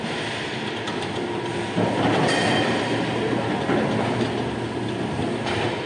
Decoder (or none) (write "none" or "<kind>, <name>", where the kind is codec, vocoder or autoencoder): none